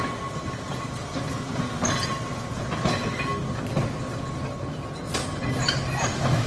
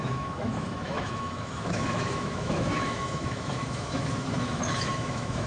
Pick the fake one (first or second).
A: second